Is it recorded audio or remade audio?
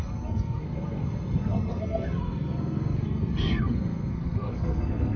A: remade